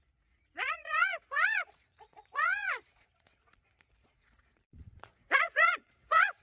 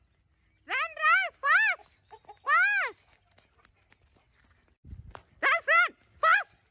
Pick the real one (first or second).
second